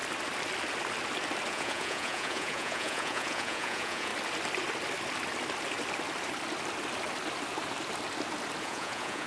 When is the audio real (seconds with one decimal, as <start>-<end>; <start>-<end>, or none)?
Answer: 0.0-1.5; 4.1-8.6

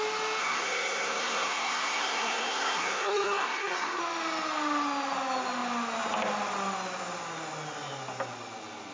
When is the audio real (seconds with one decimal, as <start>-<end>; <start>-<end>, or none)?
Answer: 0.0-0.4; 4.0-8.9

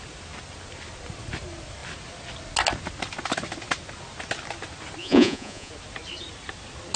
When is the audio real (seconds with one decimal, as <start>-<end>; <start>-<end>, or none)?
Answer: 0.0-5.0; 5.7-7.0